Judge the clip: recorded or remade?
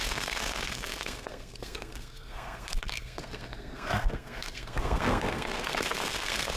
remade